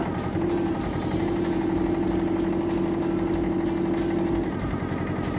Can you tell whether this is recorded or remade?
recorded